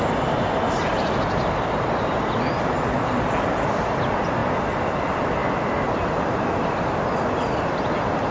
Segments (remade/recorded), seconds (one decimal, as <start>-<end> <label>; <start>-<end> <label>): 0.0-8.3 recorded